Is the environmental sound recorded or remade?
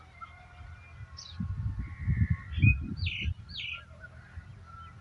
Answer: recorded